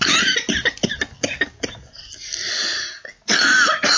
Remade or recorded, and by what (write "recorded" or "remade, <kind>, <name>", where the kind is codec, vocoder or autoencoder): recorded